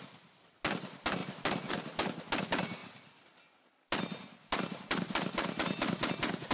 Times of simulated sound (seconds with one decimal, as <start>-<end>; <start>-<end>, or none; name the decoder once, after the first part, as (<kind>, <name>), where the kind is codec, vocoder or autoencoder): 2.8-6.1 (vocoder, BigVGAN v2)

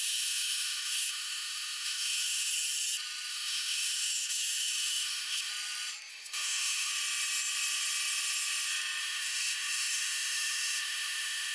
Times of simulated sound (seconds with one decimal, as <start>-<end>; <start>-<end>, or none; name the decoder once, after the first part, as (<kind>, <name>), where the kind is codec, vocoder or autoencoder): 0.0-2.5 (autoencoder, DAC-VAE); 3.3-5.5; 6.1-6.9; 9.0-11.5

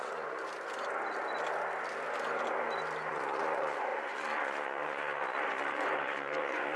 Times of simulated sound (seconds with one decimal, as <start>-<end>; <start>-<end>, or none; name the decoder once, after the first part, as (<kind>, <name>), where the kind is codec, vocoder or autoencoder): 0.0-0.4 (vocoder, Vocos); 3.1-6.8

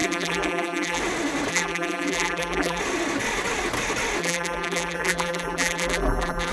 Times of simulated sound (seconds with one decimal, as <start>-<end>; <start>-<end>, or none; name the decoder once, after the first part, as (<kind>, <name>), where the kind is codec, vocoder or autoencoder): 0.0-1.0 (vocoder, BigVGAN v2); 1.5-2.8; 4.2-6.5

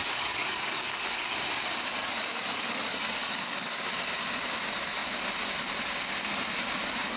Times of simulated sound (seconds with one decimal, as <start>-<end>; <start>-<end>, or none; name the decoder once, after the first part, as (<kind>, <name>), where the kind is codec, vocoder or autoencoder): 0.0-1.3 (codec, DAC); 2.0-3.8